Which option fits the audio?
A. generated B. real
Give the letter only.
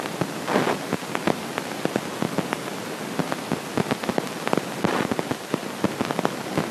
B